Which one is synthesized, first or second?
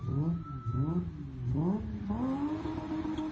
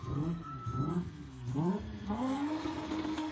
second